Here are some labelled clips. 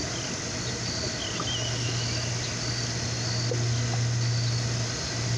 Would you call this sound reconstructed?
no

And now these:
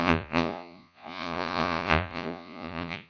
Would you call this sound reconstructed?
yes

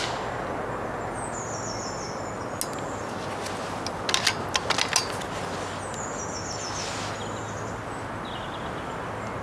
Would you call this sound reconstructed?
no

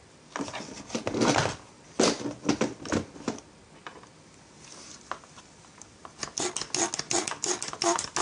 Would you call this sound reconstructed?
no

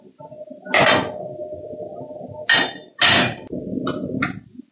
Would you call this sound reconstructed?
no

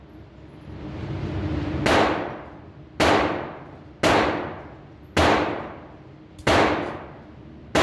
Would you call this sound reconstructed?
no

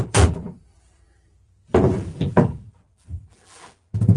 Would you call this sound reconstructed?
yes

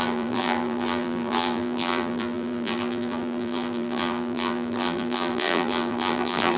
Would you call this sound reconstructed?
yes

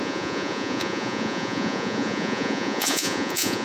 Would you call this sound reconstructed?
yes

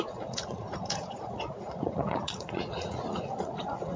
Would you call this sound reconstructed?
yes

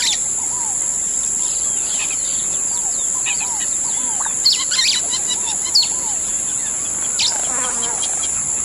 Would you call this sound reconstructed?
no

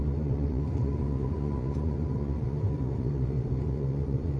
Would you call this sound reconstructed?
yes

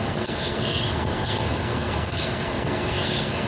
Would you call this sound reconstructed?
yes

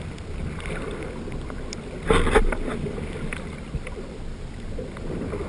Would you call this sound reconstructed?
no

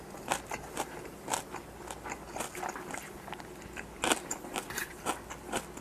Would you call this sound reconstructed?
no